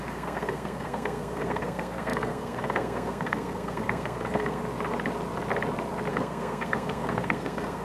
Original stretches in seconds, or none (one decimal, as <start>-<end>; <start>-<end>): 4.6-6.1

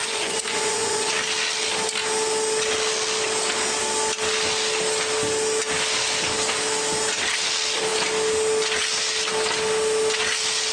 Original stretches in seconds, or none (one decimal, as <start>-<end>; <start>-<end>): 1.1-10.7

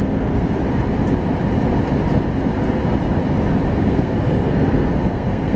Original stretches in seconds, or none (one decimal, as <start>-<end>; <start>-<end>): 0.6-3.7

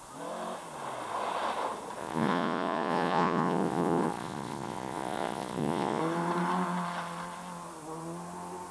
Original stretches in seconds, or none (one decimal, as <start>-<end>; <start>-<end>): 0.0-2.0; 6.0-8.7

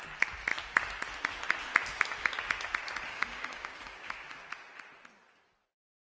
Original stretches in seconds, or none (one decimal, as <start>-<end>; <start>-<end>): 0.0-3.1; 4.4-6.0